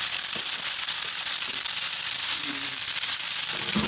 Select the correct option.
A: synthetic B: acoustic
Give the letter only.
A